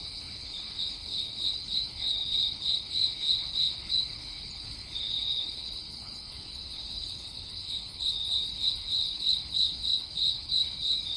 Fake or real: fake